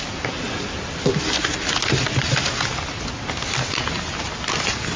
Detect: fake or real real